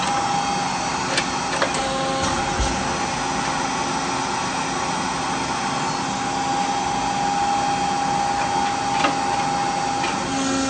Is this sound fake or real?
real